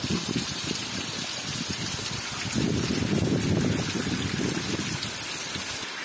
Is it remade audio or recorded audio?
recorded